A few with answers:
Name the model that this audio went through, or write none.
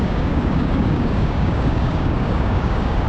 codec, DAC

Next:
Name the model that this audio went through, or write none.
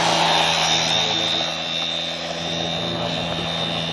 none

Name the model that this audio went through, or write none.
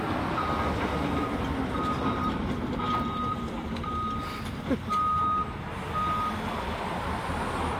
none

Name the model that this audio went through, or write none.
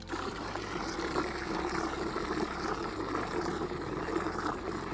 none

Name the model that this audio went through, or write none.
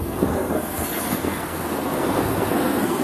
codec, SNAC